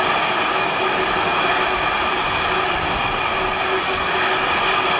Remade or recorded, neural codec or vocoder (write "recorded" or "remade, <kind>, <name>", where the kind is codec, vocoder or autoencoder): recorded